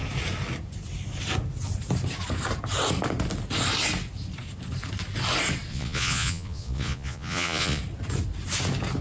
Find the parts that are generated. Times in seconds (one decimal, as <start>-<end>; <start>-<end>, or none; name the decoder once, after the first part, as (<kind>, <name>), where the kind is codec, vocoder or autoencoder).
5.7-7.8 (vocoder, Vocos)